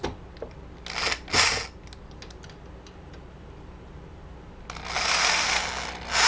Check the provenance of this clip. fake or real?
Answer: real